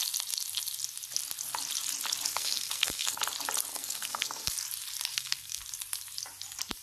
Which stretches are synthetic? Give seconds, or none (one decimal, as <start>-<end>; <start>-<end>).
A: 2.3-3.2; 3.7-4.5; 5.1-5.6